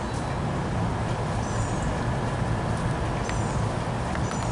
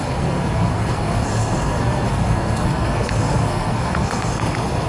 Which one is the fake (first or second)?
second